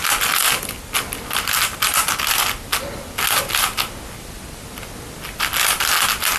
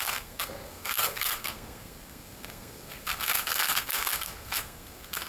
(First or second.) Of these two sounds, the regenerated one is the second